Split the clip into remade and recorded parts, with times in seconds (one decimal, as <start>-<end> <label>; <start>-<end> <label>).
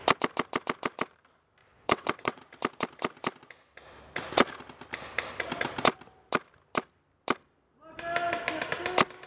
0.0-1.6 recorded; 1.6-2.4 remade; 2.4-9.3 recorded